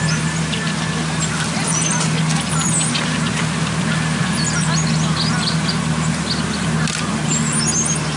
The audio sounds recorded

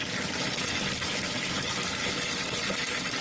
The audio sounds recorded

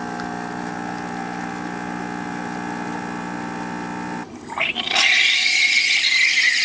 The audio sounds recorded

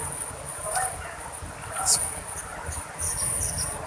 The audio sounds recorded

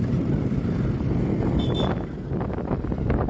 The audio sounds recorded